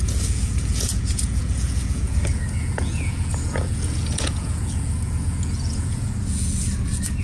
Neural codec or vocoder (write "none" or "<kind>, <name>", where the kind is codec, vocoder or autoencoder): vocoder, Vocos